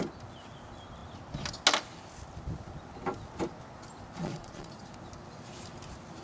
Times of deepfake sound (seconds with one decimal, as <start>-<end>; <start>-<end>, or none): 4.2-4.9